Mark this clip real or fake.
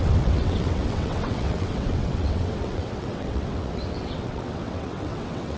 fake